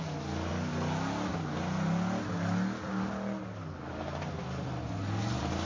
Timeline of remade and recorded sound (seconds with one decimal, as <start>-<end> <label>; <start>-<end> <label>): 0.0-5.7 recorded